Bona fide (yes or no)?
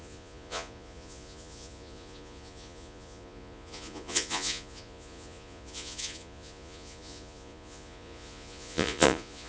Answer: no